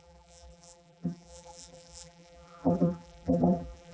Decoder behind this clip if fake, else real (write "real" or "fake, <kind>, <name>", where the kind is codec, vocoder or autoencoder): fake, vocoder, BigVGAN v2